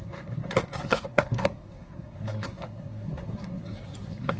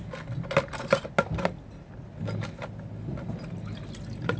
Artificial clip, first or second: first